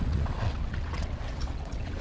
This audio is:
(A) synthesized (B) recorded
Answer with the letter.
A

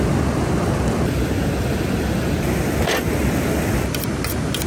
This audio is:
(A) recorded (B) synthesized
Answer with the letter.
A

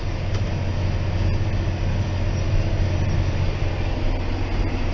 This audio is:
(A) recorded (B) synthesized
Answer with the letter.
A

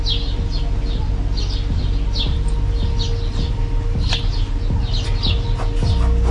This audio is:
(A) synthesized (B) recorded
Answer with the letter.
B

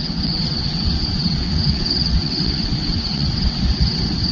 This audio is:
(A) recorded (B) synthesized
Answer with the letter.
B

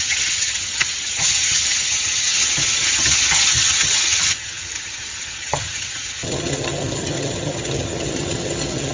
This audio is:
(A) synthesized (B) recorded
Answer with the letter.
A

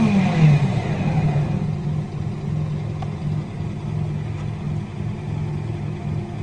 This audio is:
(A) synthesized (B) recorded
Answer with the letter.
B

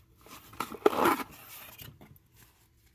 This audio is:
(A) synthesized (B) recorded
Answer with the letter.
B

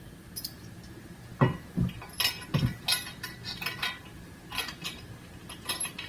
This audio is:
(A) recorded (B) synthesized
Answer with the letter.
A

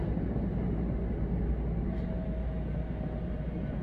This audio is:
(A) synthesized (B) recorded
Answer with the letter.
B